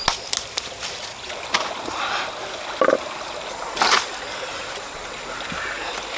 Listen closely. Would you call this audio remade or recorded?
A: recorded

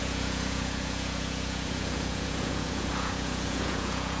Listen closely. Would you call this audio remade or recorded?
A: remade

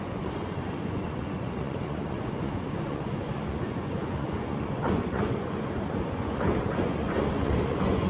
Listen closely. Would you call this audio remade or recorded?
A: remade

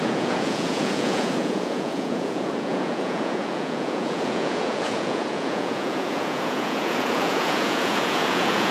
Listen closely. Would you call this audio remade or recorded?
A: remade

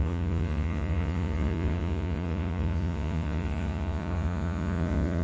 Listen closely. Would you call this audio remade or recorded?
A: remade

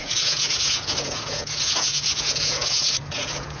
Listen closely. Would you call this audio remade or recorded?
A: remade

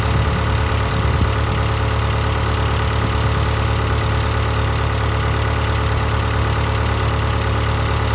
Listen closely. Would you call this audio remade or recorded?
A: recorded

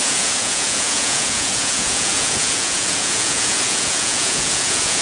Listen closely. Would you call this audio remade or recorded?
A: remade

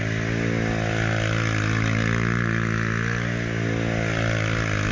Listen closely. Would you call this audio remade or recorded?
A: recorded